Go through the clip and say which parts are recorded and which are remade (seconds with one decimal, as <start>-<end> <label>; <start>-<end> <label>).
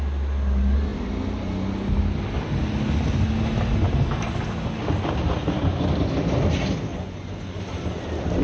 0.0-6.9 recorded; 6.9-7.6 remade; 7.6-8.4 recorded